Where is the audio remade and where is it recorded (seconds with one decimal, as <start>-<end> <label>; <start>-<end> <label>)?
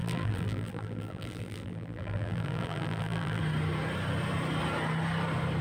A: 0.0-3.4 remade; 3.4-5.6 recorded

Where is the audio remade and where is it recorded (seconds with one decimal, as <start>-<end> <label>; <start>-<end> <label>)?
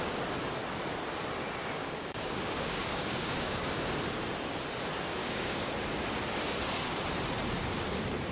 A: 0.0-1.8 recorded; 1.8-3.9 remade; 3.9-5.2 recorded; 5.2-5.7 remade; 5.7-8.3 recorded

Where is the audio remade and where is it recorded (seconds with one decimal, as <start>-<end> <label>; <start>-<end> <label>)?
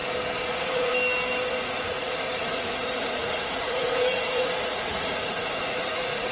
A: 0.0-0.5 recorded; 0.5-0.9 remade; 0.9-1.5 recorded; 1.5-6.3 remade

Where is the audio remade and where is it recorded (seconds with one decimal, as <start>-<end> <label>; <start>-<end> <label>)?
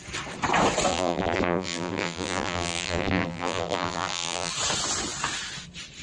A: 0.0-0.9 recorded; 0.9-4.5 remade; 4.5-6.0 recorded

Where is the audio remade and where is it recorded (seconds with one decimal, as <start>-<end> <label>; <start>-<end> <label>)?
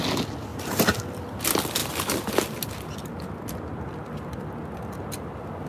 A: 0.0-0.5 recorded; 0.5-1.2 remade; 1.2-5.7 recorded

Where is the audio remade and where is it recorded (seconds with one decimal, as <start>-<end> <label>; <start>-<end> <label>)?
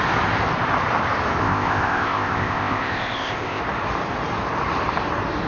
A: 0.0-1.4 recorded; 1.4-3.6 remade; 3.6-5.5 recorded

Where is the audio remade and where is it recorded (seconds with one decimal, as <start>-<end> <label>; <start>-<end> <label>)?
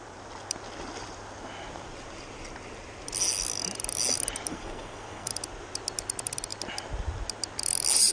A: 0.0-4.5 recorded; 4.5-5.3 remade; 5.3-8.1 recorded